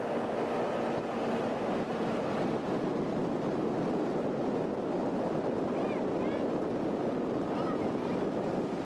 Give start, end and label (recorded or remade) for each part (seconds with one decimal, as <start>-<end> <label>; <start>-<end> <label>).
0.0-8.8 recorded